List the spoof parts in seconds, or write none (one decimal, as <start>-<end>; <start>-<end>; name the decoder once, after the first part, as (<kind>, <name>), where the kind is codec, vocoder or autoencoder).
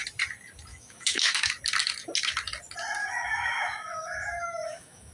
0.7-1.5 (autoencoder, DAC-VAE); 3.0-5.1